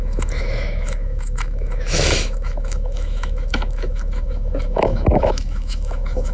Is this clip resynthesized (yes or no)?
yes